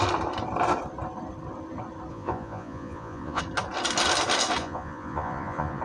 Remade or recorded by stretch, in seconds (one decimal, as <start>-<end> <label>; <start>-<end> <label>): 0.0-2.1 recorded; 2.1-3.4 remade; 3.4-4.6 recorded; 4.6-5.8 remade